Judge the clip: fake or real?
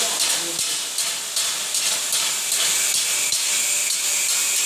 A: real